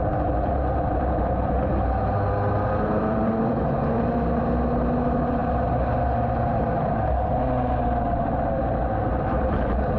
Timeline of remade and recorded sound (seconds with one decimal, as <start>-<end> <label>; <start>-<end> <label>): 0.0-3.0 recorded; 3.0-3.6 remade; 3.6-10.0 recorded